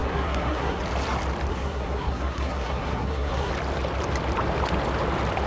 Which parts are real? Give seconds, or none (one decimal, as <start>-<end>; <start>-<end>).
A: 0.8-1.5; 3.5-5.5

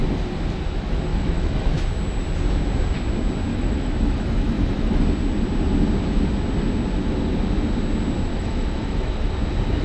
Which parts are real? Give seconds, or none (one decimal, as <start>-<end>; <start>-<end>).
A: 0.0-1.1; 1.8-3.5; 5.0-8.3; 9.3-9.8

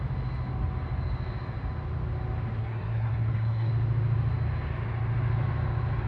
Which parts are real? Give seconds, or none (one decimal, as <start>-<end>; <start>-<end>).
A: 0.0-2.6; 3.7-6.1

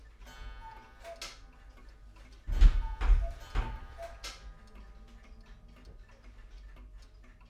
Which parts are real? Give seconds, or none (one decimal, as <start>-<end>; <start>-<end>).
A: 0.0-7.5

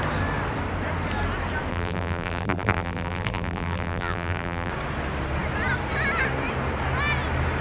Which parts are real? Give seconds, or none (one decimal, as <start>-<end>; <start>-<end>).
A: 0.0-1.7; 4.7-7.6

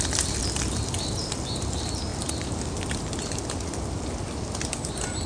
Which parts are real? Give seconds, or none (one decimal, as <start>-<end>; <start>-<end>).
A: 0.0-5.3